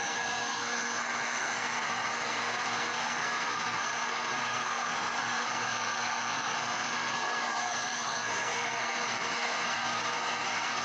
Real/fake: fake